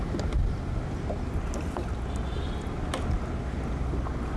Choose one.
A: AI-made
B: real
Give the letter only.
B